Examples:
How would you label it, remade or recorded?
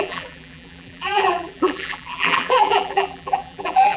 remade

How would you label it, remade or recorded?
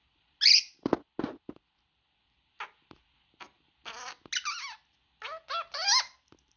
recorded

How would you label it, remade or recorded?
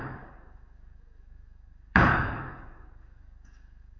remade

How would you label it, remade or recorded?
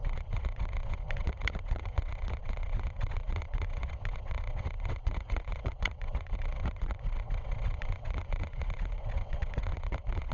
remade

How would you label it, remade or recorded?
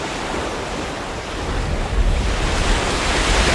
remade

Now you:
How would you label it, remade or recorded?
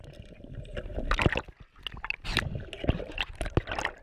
recorded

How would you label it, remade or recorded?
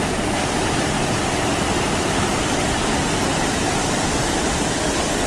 remade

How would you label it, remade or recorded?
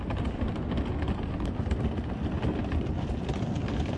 recorded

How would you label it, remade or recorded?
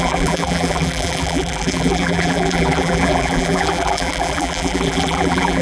remade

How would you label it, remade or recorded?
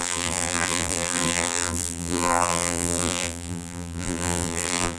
remade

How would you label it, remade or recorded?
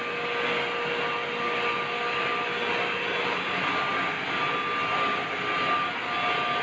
recorded